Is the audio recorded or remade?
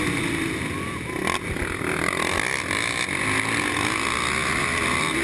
recorded